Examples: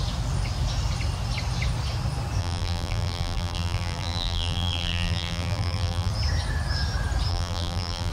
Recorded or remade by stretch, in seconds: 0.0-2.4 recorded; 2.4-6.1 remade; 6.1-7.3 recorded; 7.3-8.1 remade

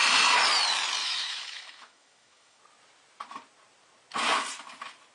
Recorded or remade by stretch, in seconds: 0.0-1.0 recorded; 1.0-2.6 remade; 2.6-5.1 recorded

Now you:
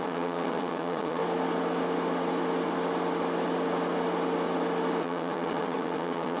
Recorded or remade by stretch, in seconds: 0.0-1.2 remade; 1.2-5.0 recorded; 5.0-6.4 remade